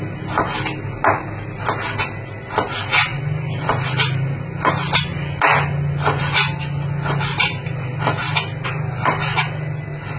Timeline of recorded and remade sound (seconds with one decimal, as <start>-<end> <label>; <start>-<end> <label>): 0.0-10.2 recorded